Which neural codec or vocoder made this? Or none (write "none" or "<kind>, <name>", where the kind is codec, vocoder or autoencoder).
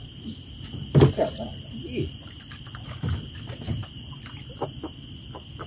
none